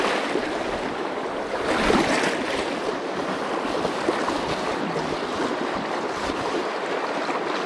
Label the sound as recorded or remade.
recorded